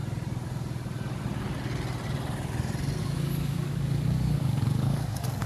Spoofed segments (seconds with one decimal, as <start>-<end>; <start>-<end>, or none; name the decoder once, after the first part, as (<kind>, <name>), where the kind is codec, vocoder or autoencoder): 3.0-5.5 (codec, DAC)